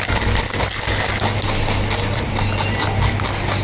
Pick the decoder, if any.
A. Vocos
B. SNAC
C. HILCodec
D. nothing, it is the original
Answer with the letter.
D